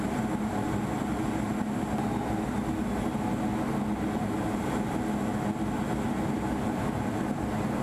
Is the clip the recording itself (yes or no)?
yes